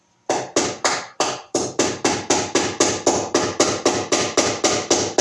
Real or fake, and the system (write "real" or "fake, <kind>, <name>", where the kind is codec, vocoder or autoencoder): real